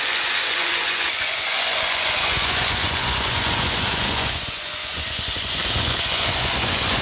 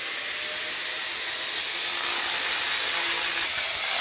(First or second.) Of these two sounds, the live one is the second